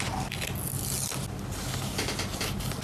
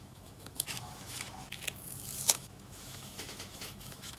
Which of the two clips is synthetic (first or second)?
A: second